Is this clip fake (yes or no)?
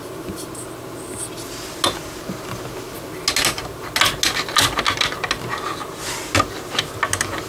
no